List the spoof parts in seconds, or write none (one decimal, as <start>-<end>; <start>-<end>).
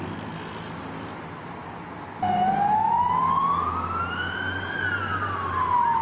none